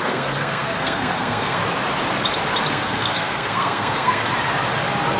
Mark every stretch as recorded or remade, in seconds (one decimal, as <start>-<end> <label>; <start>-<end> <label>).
0.0-1.6 remade; 1.6-2.7 recorded; 2.7-4.2 remade; 4.2-5.2 recorded